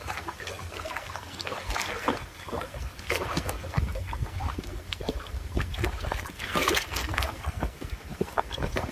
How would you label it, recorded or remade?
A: remade